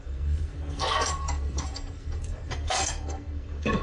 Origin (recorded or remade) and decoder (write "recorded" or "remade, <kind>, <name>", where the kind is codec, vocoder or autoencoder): remade, codec, SNAC